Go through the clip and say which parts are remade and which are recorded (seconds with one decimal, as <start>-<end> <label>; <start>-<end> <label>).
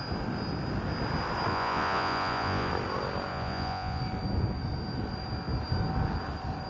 0.0-1.5 recorded; 1.5-2.7 remade; 2.7-3.3 recorded; 3.3-4.0 remade; 4.0-6.7 recorded